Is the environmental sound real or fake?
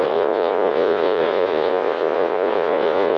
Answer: fake